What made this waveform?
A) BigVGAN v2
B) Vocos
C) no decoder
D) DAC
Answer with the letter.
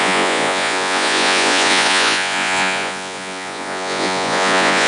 B